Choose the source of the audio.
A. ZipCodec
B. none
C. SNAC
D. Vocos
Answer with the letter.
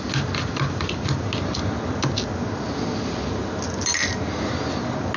B